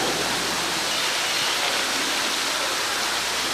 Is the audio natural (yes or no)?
yes